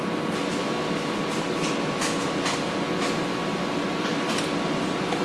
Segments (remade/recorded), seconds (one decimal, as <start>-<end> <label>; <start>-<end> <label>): 0.0-0.6 recorded; 0.6-1.2 remade; 1.2-5.2 recorded